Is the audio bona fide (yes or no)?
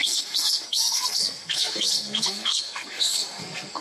no